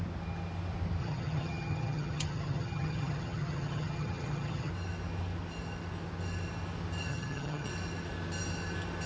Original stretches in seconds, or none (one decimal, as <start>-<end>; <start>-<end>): 0.0-1.0; 4.7-7.1; 7.7-9.1